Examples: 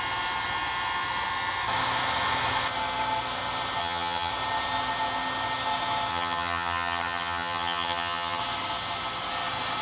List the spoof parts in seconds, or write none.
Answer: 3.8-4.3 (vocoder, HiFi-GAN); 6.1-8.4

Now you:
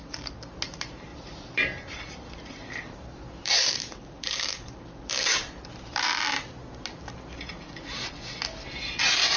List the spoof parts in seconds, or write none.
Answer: 0.0-6.6 (vocoder, BigVGAN v2); 9.0-9.4